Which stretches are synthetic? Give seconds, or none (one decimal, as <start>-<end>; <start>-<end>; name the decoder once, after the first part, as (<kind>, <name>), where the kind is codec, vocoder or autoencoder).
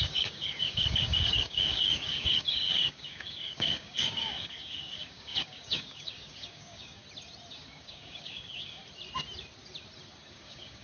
0.0-7.0 (codec, DAC); 7.5-8.8; 10.3-10.8